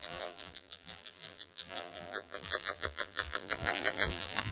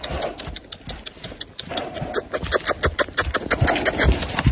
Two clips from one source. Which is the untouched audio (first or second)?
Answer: second